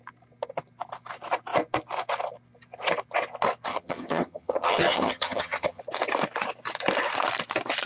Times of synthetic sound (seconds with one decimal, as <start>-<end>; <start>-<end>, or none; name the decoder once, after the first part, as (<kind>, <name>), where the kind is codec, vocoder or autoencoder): 3.7-5.8 (vocoder, HiFi-GAN)